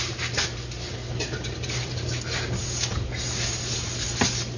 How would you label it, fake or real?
real